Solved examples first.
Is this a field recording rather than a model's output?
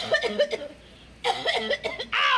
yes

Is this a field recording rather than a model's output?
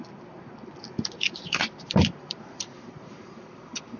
no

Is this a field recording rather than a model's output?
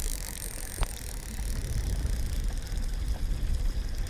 yes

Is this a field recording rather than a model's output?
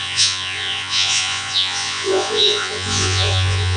no